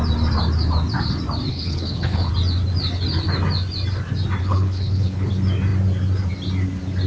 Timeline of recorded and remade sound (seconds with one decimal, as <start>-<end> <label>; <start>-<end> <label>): 0.0-1.5 recorded; 1.5-2.3 remade; 2.3-4.4 recorded; 4.4-5.3 remade; 5.3-7.1 recorded